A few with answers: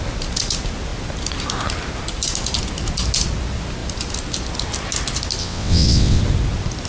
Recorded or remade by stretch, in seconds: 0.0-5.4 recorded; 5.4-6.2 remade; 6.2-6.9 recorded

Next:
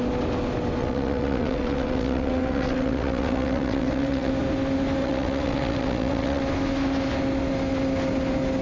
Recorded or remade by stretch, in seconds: 0.0-0.8 recorded; 0.8-4.3 remade; 4.3-5.0 recorded; 5.0-6.4 remade; 6.4-8.6 recorded

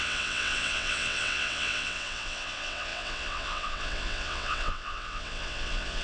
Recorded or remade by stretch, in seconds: 0.0-6.0 remade

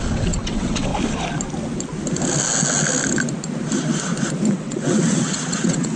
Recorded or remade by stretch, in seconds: 0.0-0.9 remade; 0.9-4.5 recorded; 4.5-6.0 remade

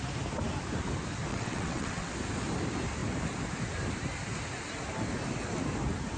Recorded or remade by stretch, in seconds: 0.0-1.3 recorded; 1.3-2.1 remade; 2.1-6.2 recorded

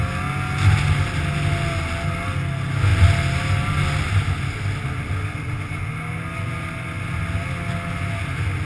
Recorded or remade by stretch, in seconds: 0.0-8.7 recorded

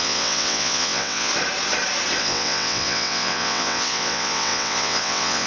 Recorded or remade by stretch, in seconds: 0.0-1.3 remade; 1.3-2.2 recorded; 2.2-5.5 remade